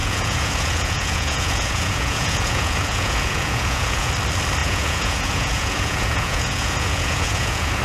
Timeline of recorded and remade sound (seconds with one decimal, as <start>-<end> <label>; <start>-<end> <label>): 0.0-4.1 remade; 4.1-4.6 recorded; 4.6-7.8 remade

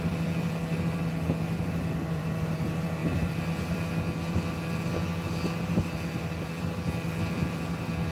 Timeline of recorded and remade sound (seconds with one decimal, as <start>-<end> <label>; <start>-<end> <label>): 0.0-3.0 recorded; 3.0-3.9 remade; 3.9-8.1 recorded

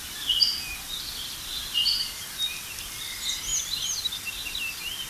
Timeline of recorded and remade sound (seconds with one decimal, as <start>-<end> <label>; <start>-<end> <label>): 0.0-5.1 recorded

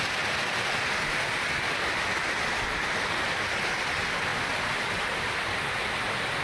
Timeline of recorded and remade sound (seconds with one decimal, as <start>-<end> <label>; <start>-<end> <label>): 0.0-6.4 recorded

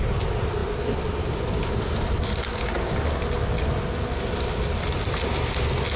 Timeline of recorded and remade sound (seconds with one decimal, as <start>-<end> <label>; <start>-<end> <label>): 0.0-6.0 recorded

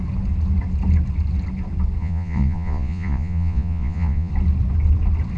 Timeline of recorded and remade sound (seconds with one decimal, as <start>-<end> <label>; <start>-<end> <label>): 0.0-2.0 recorded; 2.0-4.3 remade; 4.3-5.4 recorded